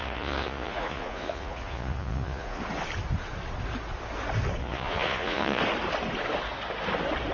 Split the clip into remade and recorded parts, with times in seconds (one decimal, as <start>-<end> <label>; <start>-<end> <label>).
0.0-2.6 remade; 2.6-4.6 recorded; 4.6-5.6 remade; 5.6-7.3 recorded